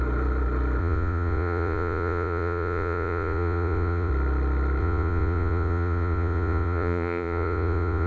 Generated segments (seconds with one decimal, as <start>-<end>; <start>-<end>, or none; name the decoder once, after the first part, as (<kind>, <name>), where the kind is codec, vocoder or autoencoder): 0.8-4.1 (vocoder, Vocos); 4.8-8.1